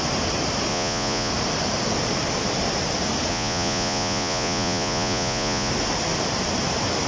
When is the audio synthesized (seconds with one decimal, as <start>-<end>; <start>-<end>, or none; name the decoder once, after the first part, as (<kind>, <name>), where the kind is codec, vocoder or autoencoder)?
0.7-1.3 (vocoder, Vocos); 3.3-5.7